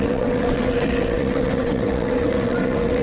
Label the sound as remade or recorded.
remade